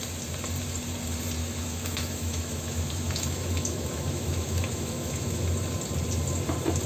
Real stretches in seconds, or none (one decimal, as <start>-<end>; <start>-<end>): 0.0-1.4; 5.5-6.9